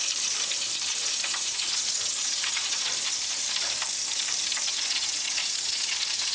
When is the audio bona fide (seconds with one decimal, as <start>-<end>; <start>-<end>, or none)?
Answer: 0.0-1.0; 2.9-4.7